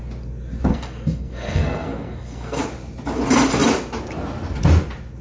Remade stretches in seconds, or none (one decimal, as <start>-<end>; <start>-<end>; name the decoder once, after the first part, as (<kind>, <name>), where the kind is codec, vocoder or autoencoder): 0.7-2.6 (codec, SNAC)